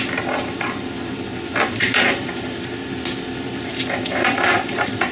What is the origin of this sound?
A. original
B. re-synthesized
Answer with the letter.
B